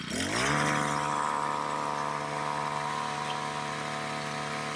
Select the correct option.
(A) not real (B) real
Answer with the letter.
B